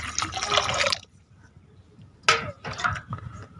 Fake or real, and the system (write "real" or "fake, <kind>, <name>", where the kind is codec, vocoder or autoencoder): real